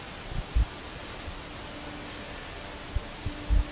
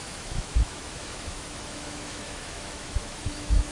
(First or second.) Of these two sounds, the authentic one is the first